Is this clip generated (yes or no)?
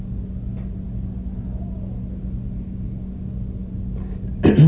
no